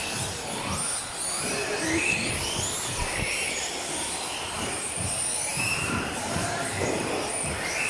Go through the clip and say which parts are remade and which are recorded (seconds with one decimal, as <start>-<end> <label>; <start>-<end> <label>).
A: 0.0-5.5 recorded; 5.5-7.1 remade; 7.1-7.9 recorded